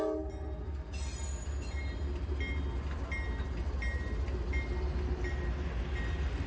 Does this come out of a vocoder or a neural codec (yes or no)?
no